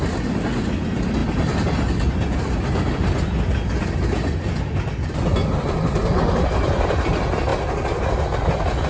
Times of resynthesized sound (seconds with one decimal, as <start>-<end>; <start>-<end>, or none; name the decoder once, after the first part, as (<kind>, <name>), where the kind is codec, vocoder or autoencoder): none